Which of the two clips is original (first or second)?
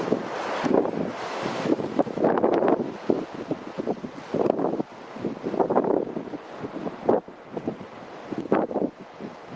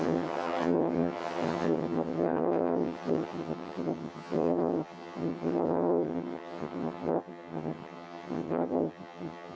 first